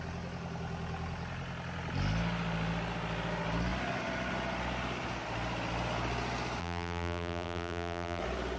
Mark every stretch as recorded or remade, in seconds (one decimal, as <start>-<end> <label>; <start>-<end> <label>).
0.0-6.6 recorded; 6.6-8.2 remade; 8.2-8.6 recorded